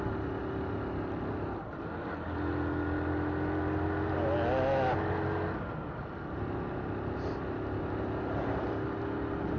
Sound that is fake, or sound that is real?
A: real